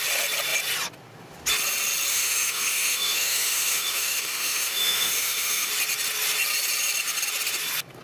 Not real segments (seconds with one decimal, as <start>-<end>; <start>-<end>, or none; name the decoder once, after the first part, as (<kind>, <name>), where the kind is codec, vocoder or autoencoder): 2.1-5.7 (autoencoder, DAC-VAE)